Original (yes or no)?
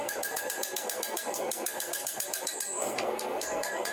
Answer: no